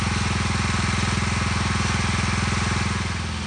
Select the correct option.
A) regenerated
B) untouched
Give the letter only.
B